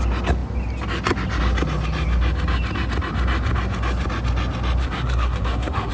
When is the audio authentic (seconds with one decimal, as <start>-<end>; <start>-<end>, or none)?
0.0-4.8